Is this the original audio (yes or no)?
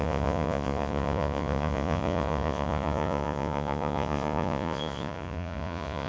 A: no